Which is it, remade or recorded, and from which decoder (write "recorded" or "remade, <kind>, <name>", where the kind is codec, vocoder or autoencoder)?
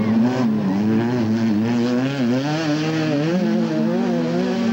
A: recorded